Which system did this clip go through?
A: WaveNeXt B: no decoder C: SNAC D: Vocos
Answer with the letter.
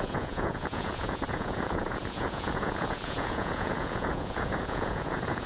D